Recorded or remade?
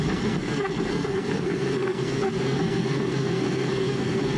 remade